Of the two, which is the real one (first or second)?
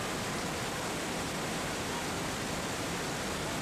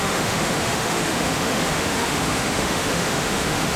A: first